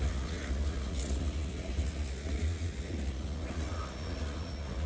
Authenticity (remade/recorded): remade